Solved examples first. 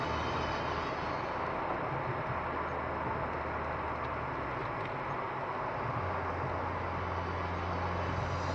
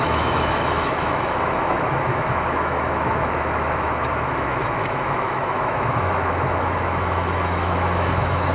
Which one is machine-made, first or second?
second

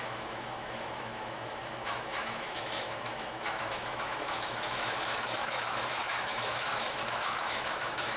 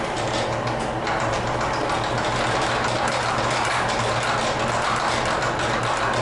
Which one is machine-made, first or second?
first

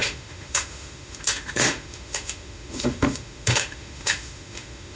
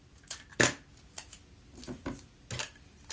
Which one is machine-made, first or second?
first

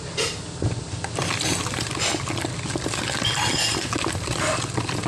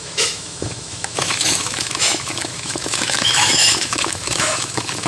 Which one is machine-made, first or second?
second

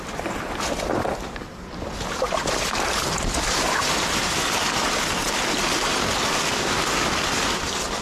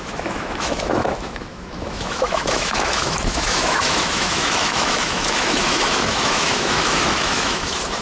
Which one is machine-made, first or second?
second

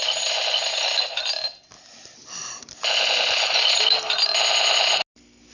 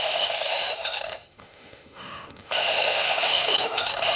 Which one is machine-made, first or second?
second